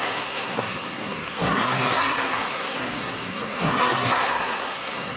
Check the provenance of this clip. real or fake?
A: fake